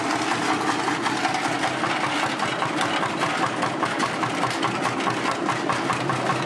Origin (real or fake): real